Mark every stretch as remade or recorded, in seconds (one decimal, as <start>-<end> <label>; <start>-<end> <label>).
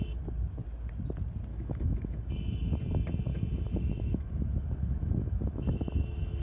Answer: 0.0-1.5 recorded; 1.5-2.3 remade; 2.3-3.3 recorded; 3.3-6.4 remade